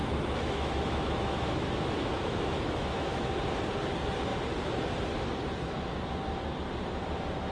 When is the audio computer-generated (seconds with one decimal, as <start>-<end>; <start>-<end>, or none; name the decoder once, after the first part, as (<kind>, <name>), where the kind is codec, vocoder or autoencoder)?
0.0-3.3 (autoencoder, DAC-VAE)